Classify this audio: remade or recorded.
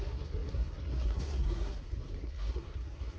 remade